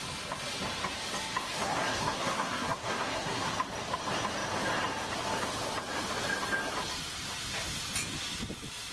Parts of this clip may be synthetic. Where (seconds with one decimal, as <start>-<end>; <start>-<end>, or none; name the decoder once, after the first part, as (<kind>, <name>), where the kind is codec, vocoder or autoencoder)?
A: 1.4-3.5 (codec, SNAC)